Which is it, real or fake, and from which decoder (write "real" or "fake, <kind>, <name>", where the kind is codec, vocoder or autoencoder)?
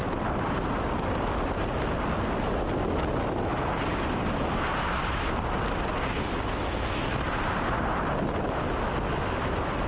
real